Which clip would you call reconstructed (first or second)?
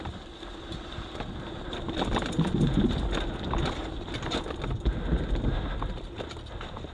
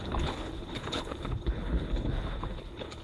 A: second